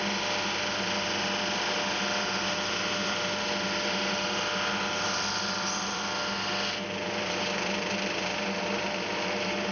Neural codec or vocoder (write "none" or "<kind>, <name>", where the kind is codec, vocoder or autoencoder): none